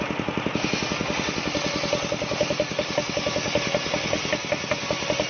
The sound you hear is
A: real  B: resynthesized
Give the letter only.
A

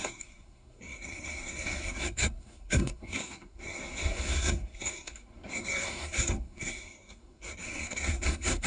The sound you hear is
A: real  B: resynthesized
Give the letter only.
B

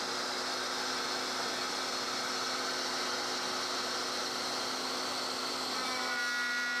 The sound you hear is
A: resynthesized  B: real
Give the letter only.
B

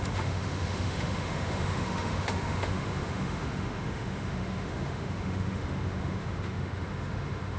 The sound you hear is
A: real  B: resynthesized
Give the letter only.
B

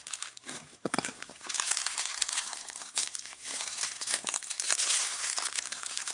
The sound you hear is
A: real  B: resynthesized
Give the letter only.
B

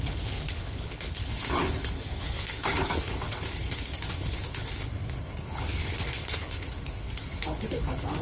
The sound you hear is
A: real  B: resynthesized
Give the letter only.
B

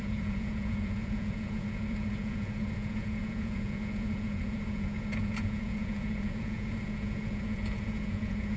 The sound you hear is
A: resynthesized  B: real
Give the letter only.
A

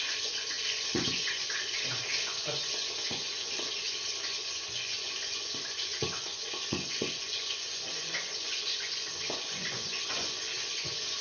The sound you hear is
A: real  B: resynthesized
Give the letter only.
B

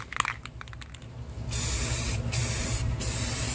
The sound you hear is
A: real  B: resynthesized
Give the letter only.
A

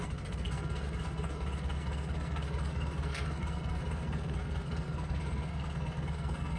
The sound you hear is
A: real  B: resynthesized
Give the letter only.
B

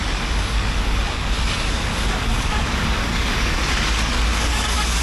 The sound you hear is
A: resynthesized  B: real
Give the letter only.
A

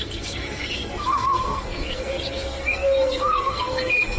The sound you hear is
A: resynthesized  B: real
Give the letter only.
A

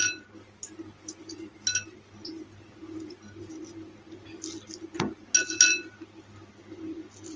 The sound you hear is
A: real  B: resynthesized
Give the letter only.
A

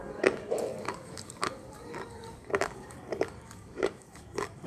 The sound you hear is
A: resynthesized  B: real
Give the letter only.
A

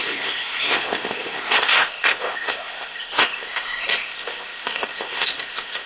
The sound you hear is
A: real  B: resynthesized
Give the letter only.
B